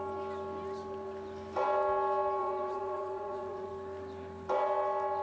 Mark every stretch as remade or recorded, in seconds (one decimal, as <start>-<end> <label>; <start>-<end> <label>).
0.0-2.4 recorded; 2.4-3.7 remade; 3.7-5.2 recorded